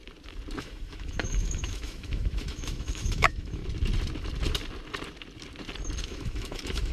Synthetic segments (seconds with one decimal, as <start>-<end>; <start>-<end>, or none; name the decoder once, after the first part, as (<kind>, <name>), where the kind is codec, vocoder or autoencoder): 0.6-3.6 (autoencoder, DAC-VAE); 6.0-6.9